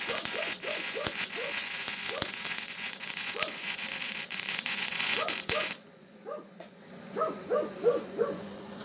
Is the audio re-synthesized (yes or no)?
yes